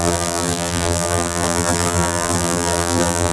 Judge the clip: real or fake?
fake